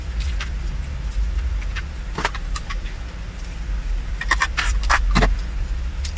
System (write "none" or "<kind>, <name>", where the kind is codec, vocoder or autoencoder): vocoder, BigVGAN v2